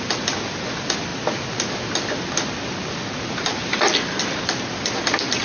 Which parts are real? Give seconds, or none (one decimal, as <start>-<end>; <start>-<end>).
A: 1.1-3.2